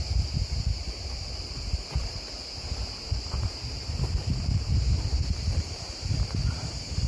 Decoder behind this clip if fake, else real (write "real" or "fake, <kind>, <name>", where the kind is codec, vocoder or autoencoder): fake, vocoder, BigVGAN v2